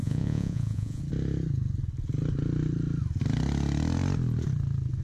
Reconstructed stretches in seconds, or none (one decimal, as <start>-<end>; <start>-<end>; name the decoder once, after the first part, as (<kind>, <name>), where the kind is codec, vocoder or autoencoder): 0.0-1.0 (vocoder, Vocos)